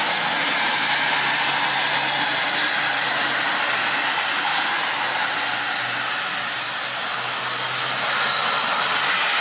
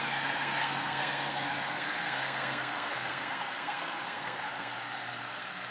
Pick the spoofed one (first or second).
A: second